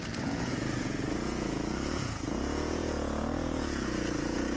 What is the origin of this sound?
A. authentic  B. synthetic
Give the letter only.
B